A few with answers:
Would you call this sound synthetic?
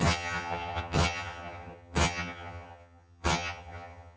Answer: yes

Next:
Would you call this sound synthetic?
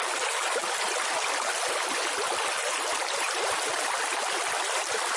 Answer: no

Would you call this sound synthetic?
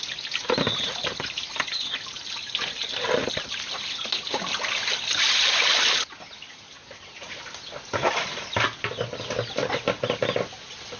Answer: no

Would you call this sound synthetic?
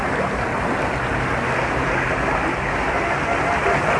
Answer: no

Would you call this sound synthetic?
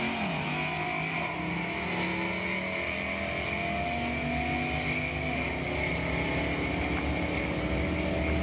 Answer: no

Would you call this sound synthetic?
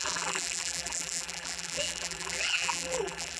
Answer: yes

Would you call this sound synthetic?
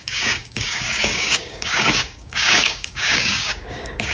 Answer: yes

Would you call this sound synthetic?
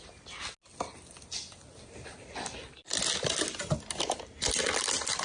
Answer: no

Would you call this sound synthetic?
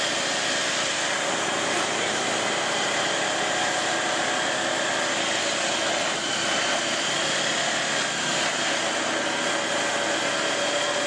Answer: no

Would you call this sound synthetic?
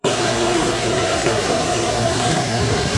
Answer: yes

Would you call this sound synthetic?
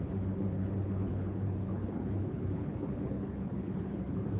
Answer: yes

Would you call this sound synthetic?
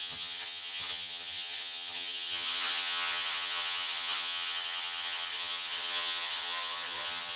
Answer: yes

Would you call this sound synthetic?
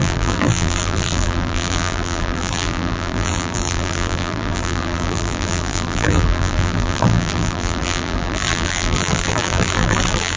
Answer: yes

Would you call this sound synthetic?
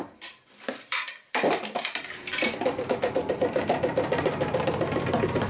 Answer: yes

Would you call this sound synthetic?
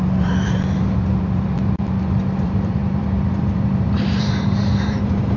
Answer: yes